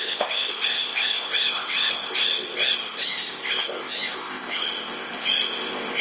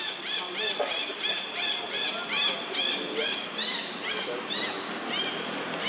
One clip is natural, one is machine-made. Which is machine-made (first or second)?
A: first